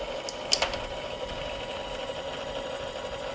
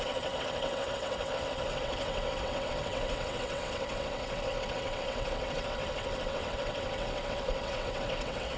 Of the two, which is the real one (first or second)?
first